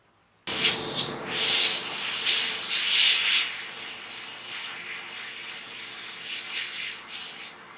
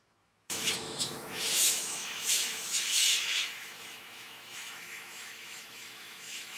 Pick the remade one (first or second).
second